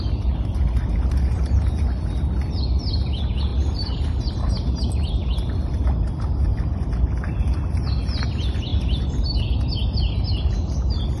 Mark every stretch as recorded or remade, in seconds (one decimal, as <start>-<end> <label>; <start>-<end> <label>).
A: 0.0-3.5 recorded; 3.5-4.2 remade; 4.2-6.5 recorded; 6.5-7.5 remade; 7.5-11.2 recorded